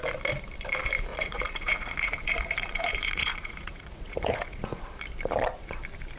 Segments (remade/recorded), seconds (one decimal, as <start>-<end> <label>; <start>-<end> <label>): 0.0-1.1 recorded; 1.1-4.8 remade; 4.8-6.2 recorded